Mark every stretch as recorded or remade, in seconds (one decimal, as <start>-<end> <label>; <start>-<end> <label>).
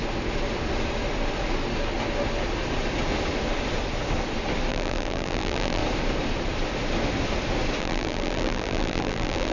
0.0-4.7 recorded; 4.7-5.8 remade; 5.8-7.8 recorded; 7.8-9.5 remade